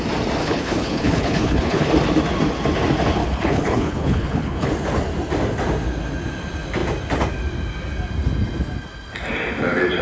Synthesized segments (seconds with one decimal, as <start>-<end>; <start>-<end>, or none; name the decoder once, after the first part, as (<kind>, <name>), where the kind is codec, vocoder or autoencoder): 0.4-1.9 (codec, HILCodec); 3.2-4.7